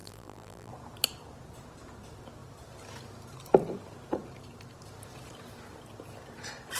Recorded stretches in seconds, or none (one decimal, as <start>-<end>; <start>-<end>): 0.7-6.8